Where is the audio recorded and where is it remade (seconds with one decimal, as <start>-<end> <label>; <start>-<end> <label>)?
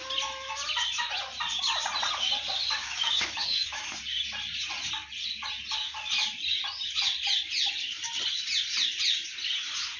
0.0-2.8 recorded; 2.8-3.9 remade; 3.9-10.0 recorded